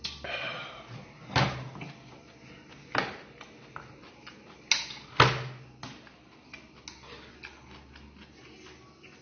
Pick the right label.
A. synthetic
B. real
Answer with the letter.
B